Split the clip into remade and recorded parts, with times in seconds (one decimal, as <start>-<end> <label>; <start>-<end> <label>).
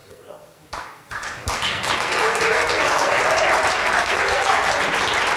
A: 0.0-3.2 remade; 3.2-3.8 recorded; 3.8-4.7 remade; 4.7-5.4 recorded